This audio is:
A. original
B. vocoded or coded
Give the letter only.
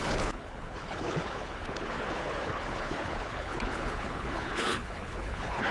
B